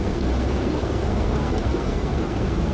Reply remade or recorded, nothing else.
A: remade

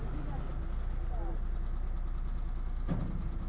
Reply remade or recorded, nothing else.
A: recorded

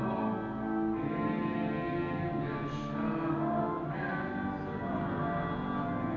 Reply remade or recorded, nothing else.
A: recorded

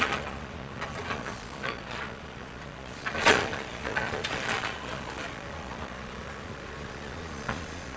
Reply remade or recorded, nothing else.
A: remade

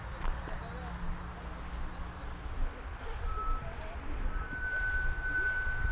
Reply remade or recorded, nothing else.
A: recorded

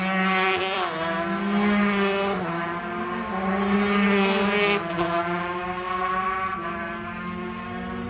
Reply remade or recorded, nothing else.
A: recorded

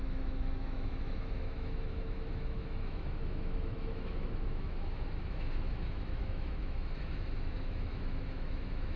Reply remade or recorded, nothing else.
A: remade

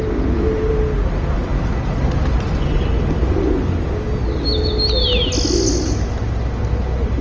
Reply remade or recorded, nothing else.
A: recorded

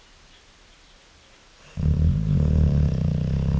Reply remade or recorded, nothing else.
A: recorded